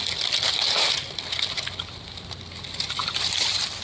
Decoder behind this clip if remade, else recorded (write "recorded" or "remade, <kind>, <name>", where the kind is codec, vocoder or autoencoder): recorded